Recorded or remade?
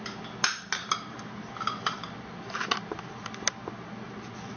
recorded